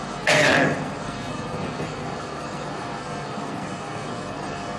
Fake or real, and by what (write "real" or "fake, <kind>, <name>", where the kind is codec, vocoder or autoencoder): fake, codec, SNAC